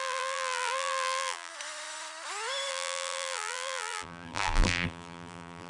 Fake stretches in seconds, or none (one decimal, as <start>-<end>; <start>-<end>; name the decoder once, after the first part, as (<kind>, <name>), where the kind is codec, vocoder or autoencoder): 0.0-1.5 (vocoder, BigVGAN v2); 2.7-5.7